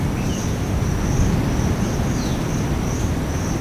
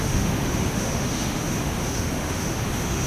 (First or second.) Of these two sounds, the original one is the first